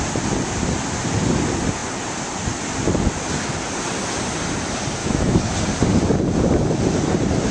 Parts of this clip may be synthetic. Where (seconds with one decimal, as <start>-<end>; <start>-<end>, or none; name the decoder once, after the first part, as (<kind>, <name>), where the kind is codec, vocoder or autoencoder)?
5.0-5.5 (autoencoder, DAC-VAE)